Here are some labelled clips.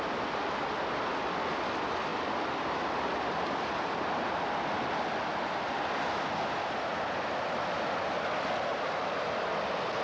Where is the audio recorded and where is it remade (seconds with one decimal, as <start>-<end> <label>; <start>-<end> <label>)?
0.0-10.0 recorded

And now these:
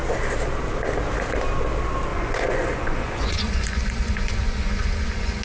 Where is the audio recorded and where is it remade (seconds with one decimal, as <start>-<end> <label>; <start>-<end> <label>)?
0.0-2.1 recorded; 2.1-5.4 remade

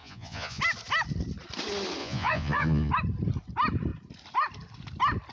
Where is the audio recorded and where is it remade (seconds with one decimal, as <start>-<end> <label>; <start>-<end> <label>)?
0.0-0.6 remade; 0.6-2.0 recorded; 2.0-2.9 remade; 2.9-5.3 recorded

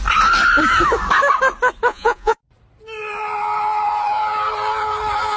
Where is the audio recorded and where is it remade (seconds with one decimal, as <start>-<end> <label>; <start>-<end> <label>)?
0.0-1.9 recorded; 1.9-2.4 remade; 2.4-5.4 recorded

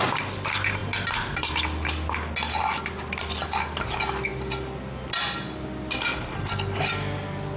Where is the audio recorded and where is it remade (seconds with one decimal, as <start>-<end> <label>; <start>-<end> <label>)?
0.0-7.6 recorded

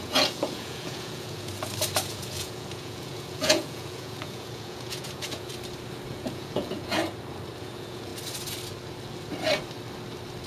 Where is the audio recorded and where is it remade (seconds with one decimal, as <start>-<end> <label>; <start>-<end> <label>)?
0.0-1.5 remade; 1.5-2.1 recorded; 2.1-5.5 remade; 5.5-6.1 recorded; 6.1-7.0 remade; 7.0-7.6 recorded; 7.6-8.1 remade; 8.1-10.5 recorded